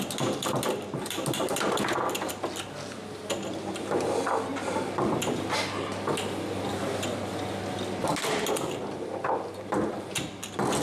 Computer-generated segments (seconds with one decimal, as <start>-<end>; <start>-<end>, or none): none